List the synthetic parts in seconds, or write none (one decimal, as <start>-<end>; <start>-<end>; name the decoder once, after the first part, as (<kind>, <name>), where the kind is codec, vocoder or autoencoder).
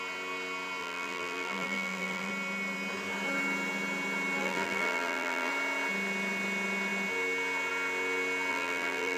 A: 0.8-2.3 (vocoder, BigVGAN v2); 4.4-5.5; 8.5-9.2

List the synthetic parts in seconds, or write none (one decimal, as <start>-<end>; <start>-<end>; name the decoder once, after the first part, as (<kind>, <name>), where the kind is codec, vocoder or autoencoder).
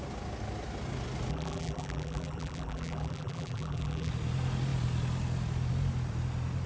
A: 1.3-4.1 (vocoder, BigVGAN v2)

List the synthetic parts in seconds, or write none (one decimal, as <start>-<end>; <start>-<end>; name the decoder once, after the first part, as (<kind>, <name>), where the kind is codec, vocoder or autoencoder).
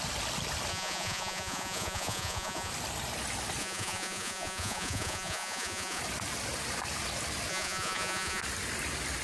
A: 0.7-2.7 (vocoder, Vocos); 3.6-6.0; 7.5-8.4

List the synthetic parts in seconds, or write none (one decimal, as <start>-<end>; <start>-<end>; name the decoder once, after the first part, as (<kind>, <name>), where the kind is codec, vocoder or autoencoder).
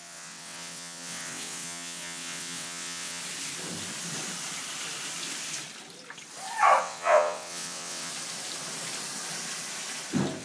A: 0.0-3.2 (vocoder, WaveNeXt); 6.8-8.1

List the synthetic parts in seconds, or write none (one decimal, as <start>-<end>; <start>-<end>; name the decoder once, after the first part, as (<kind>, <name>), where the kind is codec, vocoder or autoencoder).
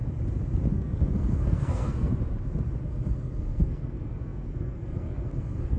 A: 0.7-2.1 (codec, SNAC); 2.8-5.8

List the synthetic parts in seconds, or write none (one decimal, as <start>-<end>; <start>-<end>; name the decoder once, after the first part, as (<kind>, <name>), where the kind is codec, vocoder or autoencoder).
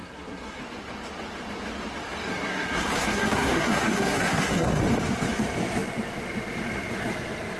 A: 0.0-0.6 (codec, SNAC); 2.3-4.8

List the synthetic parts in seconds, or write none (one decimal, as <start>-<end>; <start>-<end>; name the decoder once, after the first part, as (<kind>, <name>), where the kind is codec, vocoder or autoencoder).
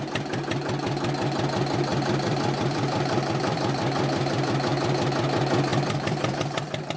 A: 1.9-4.5 (vocoder, BigVGAN v2); 5.7-7.0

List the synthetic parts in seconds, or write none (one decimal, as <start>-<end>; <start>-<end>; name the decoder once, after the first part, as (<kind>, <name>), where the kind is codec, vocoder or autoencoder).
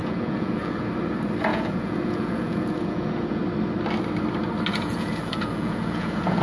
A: 0.0-0.9 (vocoder, Vocos); 1.5-3.4; 4.7-6.4